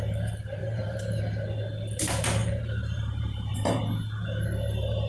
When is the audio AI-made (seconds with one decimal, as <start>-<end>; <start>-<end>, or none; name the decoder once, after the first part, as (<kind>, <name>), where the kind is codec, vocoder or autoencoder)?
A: 0.6-1.2 (vocoder, BigVGAN v2); 2.4-3.8